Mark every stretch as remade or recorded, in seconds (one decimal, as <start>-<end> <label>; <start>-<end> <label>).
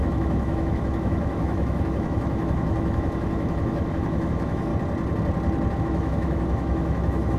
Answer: 0.0-4.7 remade; 4.7-5.8 recorded; 5.8-7.4 remade